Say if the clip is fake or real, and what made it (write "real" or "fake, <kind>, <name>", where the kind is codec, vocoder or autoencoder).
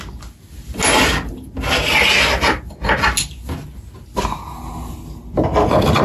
real